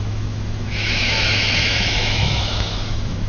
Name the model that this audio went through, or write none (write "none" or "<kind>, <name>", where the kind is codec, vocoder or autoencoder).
autoencoder, DAC-VAE